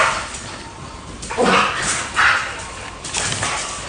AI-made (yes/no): yes